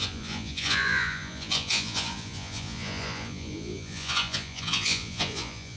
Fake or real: fake